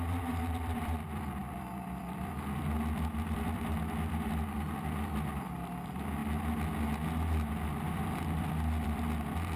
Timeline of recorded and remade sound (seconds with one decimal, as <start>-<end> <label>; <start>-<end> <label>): 0.0-6.2 remade; 6.2-7.7 recorded; 7.7-9.6 remade